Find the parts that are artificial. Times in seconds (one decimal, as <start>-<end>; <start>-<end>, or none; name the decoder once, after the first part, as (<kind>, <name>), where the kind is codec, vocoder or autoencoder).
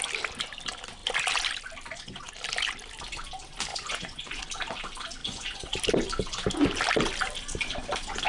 3.7-4.4 (vocoder, Vocos); 5.2-5.7